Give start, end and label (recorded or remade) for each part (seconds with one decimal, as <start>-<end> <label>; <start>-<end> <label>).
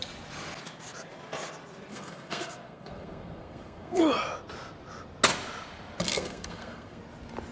0.0-1.9 recorded; 1.9-4.0 remade; 4.0-6.1 recorded; 6.1-7.0 remade; 7.0-7.5 recorded